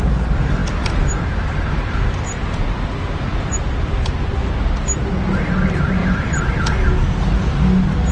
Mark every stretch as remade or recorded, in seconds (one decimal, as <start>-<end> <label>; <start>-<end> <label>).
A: 0.0-6.0 recorded; 6.0-6.5 remade; 6.5-8.1 recorded